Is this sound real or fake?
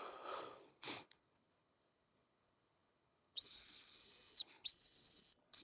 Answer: fake